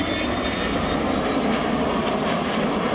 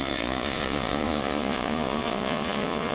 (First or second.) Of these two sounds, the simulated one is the second